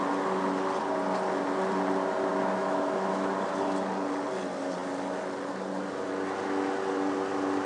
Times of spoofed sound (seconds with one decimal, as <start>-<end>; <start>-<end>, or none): 2.3-3.3